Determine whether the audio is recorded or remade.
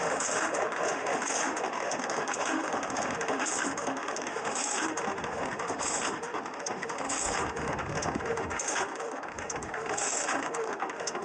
remade